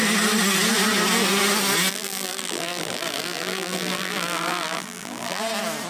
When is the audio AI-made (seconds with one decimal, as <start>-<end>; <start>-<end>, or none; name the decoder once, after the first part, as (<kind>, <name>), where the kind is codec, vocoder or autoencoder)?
1.9-5.4 (vocoder, BigVGAN v2)